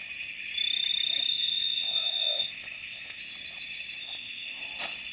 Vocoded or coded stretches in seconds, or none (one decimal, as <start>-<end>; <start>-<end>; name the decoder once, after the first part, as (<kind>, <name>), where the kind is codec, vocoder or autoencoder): 1.3-3.2 (codec, ZipCodec); 4.0-4.6